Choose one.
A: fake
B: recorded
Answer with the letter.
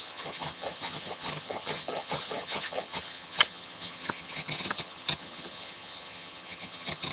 A